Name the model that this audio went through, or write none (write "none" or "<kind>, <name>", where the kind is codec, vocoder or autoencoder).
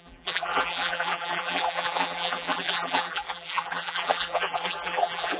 vocoder, BigVGAN v2